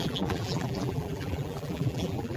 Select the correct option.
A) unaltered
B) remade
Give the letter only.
B